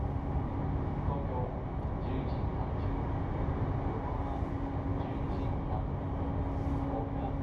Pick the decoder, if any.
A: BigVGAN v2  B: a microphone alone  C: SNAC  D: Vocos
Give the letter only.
B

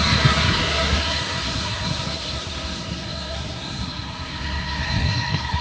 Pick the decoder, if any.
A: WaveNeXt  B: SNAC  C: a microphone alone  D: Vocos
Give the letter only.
B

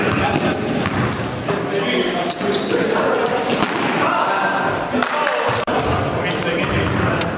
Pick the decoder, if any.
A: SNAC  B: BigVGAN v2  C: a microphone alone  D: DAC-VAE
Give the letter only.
C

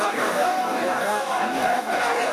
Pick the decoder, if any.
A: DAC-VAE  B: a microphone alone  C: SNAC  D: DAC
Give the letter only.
D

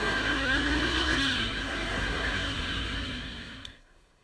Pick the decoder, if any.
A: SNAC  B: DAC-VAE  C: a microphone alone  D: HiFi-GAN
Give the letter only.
A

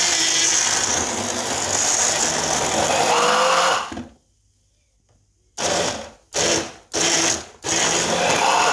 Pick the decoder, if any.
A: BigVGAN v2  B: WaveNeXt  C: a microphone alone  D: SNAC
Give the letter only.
C